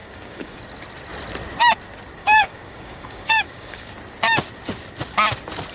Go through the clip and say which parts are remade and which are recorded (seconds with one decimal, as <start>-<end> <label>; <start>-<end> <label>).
0.0-0.6 remade; 0.6-2.2 recorded; 2.2-3.9 remade; 3.9-5.7 recorded